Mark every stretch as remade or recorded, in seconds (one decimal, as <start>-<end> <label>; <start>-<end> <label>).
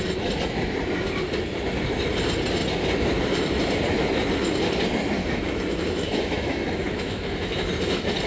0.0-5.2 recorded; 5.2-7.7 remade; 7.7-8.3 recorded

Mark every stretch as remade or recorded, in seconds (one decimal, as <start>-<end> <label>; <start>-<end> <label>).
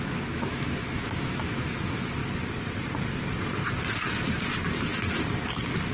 0.0-2.2 remade; 2.2-5.9 recorded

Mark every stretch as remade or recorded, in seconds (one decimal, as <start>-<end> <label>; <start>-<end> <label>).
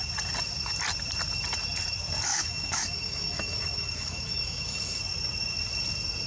0.0-2.3 recorded; 2.3-5.0 remade; 5.0-6.3 recorded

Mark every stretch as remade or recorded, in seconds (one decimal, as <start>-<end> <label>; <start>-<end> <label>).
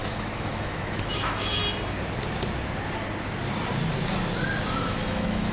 0.0-1.6 remade; 1.6-4.8 recorded; 4.8-5.5 remade